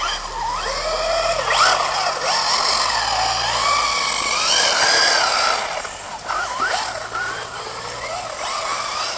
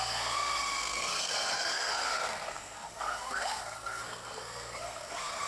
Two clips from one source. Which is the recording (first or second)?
first